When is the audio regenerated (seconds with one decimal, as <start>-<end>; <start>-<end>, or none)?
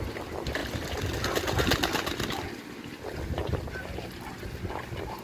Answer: none